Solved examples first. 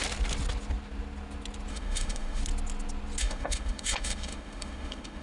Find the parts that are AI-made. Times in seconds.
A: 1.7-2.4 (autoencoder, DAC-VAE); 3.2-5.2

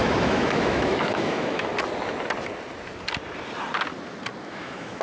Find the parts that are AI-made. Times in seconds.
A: 0.0-1.7 (autoencoder, DAC-VAE); 4.4-5.0

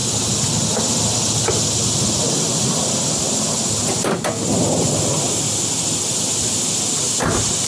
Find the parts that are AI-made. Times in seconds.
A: none

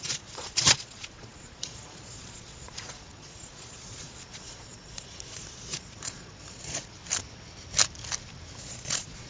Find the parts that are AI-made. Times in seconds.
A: 0.0-7.0 (vocoder, Vocos); 8.6-9.3

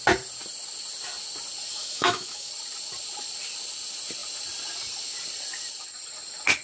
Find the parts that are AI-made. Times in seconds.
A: 1.7-2.5 (autoencoder, DAC-VAE)